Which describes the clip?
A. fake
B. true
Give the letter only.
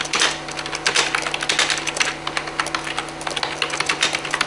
B